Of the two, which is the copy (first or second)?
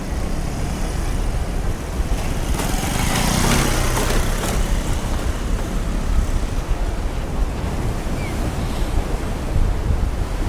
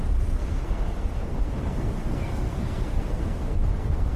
second